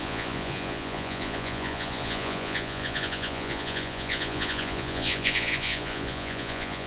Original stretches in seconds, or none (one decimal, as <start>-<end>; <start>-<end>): none